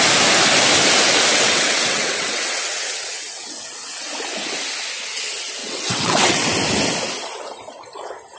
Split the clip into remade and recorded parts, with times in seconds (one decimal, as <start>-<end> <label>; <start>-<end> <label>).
0.0-1.3 recorded; 1.3-4.1 remade; 4.1-5.6 recorded; 5.6-6.5 remade; 6.5-8.4 recorded